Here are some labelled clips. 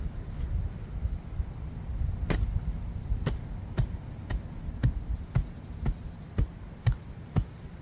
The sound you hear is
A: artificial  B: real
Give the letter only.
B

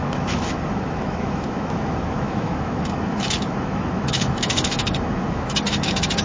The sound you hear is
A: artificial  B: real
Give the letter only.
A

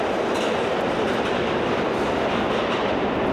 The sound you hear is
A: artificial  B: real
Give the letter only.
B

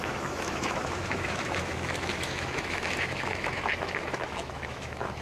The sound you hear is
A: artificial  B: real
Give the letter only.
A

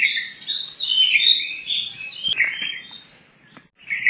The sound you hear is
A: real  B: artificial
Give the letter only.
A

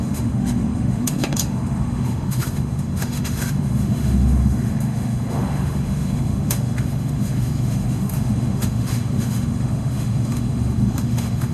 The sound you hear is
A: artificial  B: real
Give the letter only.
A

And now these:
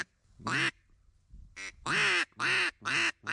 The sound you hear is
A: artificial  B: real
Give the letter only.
B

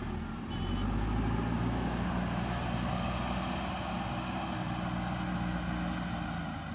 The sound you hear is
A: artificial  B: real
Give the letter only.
B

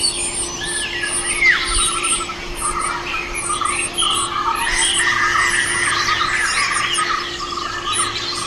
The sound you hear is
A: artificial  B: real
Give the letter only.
B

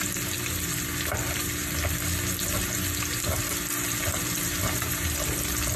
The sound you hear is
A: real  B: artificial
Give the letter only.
A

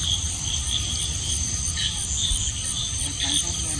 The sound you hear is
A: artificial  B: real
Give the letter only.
B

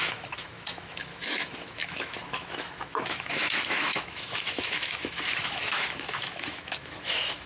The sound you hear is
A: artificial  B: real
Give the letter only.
A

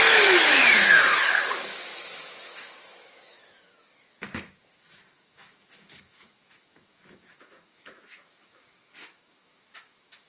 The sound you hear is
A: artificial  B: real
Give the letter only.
A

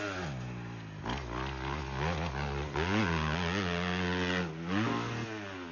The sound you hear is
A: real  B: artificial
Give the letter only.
A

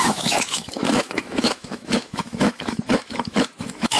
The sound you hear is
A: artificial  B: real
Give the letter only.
A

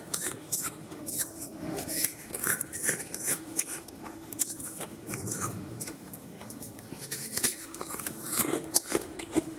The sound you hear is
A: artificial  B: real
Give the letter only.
A